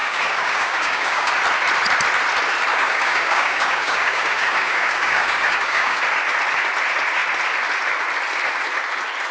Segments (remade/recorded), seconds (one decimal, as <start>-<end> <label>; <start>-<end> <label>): 0.0-1.3 remade; 1.3-2.7 recorded; 2.7-6.0 remade; 6.0-9.3 recorded